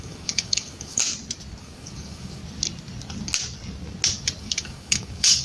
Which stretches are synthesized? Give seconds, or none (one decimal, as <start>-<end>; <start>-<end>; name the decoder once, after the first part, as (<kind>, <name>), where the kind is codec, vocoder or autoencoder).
0.0-1.0 (codec, DAC); 1.6-2.4; 4.4-5.4